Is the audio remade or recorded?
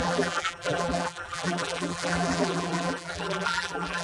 remade